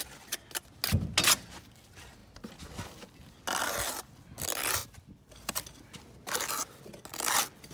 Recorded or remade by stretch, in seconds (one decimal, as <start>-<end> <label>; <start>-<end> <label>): 0.0-4.8 recorded; 4.8-5.3 remade; 5.3-7.7 recorded